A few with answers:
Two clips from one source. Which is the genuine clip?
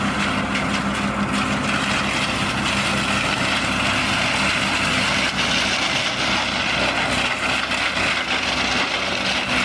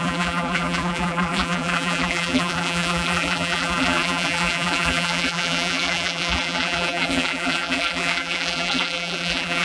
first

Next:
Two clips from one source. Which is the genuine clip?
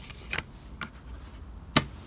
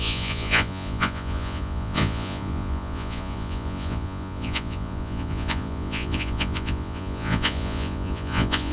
first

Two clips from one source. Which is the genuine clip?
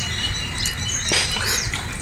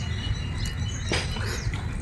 second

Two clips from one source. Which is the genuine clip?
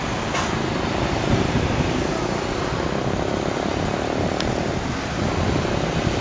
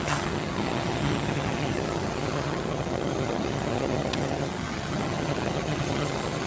first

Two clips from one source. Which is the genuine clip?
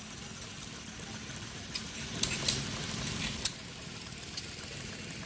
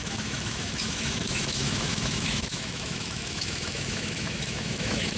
first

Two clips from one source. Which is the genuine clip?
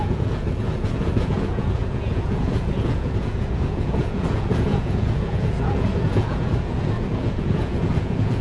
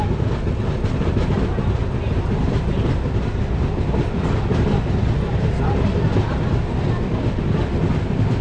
second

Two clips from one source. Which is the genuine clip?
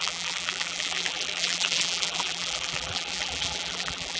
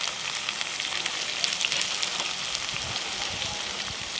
second